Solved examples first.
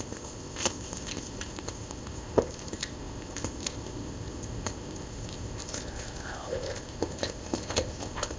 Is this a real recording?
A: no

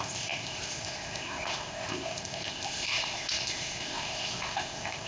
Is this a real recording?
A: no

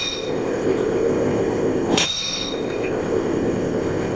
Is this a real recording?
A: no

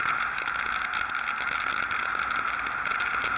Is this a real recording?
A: yes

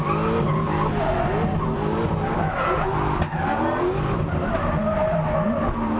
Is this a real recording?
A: yes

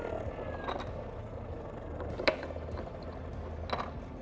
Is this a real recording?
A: yes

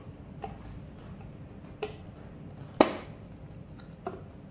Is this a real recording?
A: yes